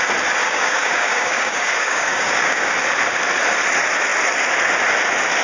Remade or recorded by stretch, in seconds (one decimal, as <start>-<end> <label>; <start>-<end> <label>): 0.0-0.4 recorded; 0.4-2.7 remade; 2.7-5.4 recorded